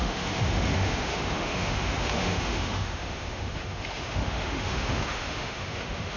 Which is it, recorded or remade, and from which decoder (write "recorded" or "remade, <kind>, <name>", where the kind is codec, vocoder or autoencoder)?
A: remade, autoencoder, DAC-VAE